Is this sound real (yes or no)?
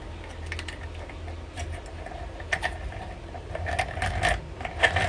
yes